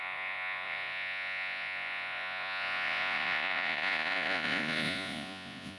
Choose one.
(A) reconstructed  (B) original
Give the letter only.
A